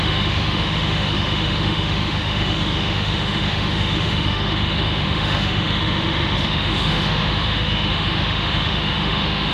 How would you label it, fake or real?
fake